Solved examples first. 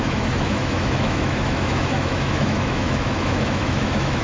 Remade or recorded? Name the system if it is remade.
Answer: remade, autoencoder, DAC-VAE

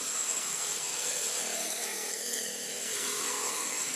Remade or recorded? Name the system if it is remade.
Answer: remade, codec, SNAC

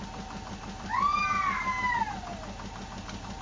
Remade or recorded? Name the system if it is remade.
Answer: recorded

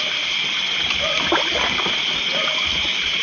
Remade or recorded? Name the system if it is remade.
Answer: recorded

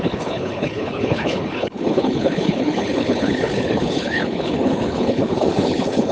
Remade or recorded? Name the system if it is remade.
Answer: remade, codec, HILCodec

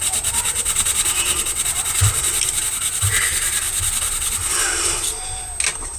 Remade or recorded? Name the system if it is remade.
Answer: recorded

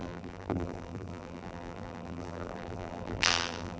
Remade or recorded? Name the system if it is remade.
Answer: remade, vocoder, BigVGAN v2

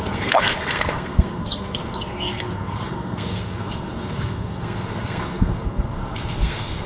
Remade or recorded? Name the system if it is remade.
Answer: remade, codec, SNAC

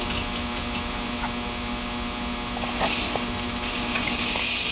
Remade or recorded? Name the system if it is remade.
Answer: recorded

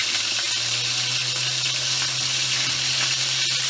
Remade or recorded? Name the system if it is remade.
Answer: recorded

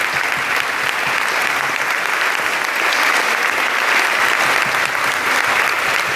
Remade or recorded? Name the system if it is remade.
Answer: recorded